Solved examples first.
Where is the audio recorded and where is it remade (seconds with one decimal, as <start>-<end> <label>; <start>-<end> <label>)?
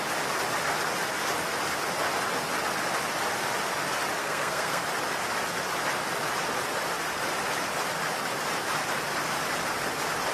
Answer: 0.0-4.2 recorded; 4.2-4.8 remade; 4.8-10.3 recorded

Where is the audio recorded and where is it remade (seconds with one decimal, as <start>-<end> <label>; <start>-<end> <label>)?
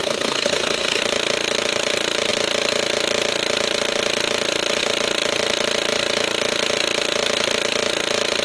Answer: 0.0-1.0 remade; 1.0-8.4 recorded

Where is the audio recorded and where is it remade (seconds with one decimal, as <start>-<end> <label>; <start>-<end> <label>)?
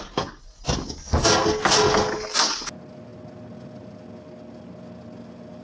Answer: 0.0-5.6 recorded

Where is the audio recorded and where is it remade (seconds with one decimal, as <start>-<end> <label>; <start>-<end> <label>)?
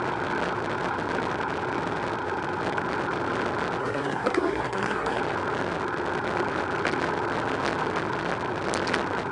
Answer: 0.0-3.8 recorded; 3.8-5.2 remade; 5.2-9.3 recorded